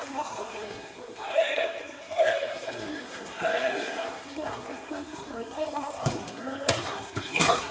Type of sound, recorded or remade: remade